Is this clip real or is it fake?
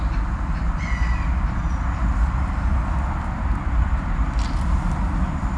real